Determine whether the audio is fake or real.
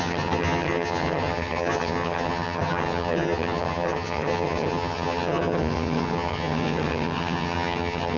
fake